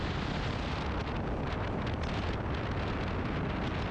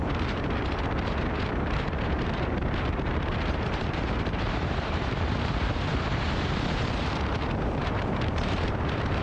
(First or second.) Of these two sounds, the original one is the first